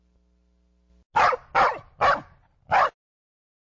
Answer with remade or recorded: recorded